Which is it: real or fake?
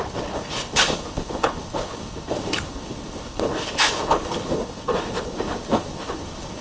fake